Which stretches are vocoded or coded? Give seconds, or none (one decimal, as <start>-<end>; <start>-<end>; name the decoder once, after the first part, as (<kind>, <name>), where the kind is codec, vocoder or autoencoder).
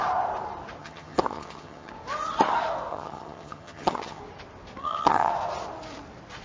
0.8-1.9 (vocoder, HiFi-GAN); 2.9-4.2; 4.8-5.3